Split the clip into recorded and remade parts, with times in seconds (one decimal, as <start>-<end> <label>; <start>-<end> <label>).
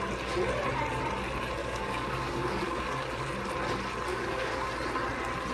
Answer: 0.0-1.6 recorded; 1.6-3.3 remade; 3.3-4.1 recorded; 4.1-4.7 remade; 4.7-5.5 recorded